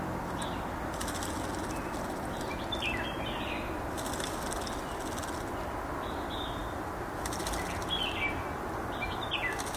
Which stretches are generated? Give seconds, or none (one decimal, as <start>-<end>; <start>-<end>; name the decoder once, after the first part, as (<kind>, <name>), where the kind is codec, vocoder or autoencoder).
none